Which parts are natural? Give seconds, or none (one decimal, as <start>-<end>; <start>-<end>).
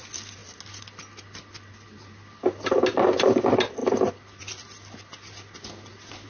0.0-6.3